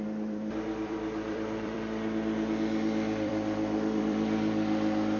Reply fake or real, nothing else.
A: fake